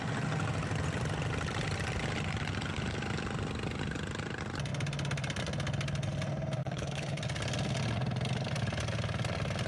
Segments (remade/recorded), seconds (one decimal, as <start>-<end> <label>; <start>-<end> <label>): 0.0-6.6 recorded; 6.6-7.2 remade; 7.2-9.7 recorded